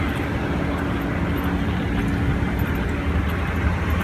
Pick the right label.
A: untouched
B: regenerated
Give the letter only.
A